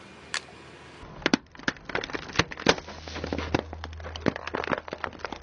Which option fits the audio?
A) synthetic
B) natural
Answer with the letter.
B